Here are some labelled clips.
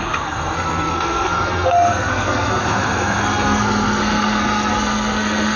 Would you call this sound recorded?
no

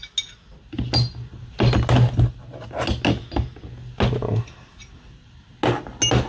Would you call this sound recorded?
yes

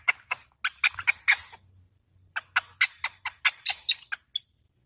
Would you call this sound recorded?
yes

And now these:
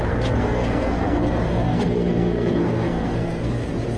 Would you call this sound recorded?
no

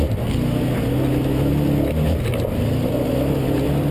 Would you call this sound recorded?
yes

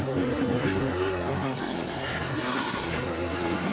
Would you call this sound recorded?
no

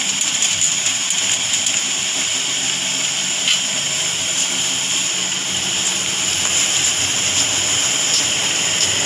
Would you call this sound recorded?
yes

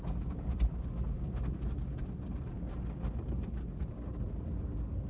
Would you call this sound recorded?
yes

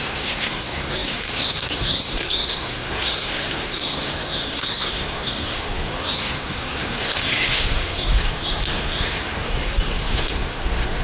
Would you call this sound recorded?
no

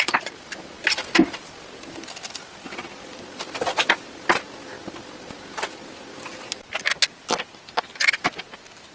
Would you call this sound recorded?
yes